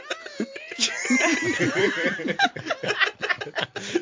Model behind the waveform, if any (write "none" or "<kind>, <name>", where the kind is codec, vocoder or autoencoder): none